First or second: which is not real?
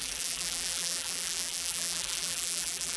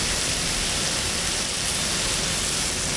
first